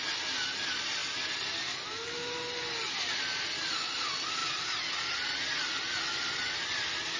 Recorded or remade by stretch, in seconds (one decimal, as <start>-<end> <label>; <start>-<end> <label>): 0.0-7.2 recorded